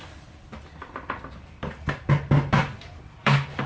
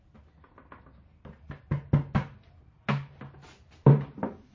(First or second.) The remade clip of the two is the first